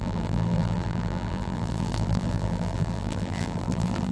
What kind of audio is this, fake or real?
fake